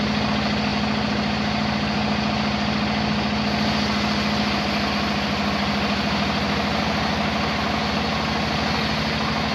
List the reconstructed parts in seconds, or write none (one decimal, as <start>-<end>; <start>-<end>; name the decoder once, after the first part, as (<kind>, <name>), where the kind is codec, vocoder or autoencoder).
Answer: none